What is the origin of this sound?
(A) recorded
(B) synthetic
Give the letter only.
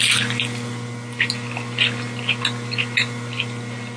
A